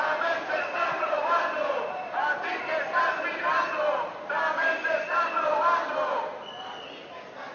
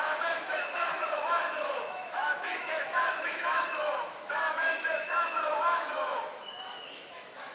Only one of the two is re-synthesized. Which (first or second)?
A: second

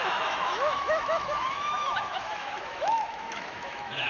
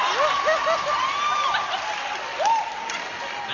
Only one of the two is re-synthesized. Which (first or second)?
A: first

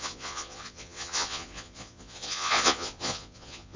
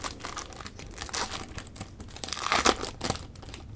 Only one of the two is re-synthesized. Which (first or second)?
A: first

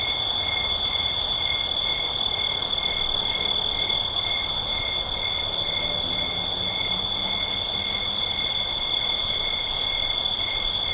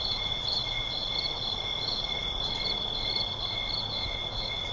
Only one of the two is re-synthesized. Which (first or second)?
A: second